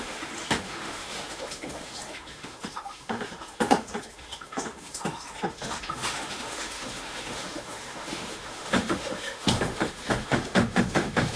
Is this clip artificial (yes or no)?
yes